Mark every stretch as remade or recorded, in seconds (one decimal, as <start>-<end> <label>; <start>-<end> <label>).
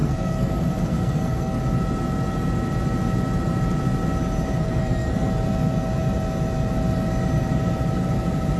0.0-1.6 remade; 1.6-4.6 recorded; 4.6-5.3 remade; 5.3-8.6 recorded